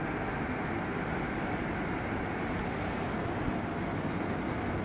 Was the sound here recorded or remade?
recorded